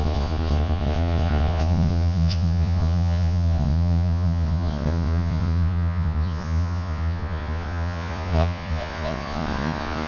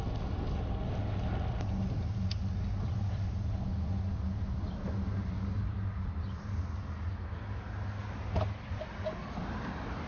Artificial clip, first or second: first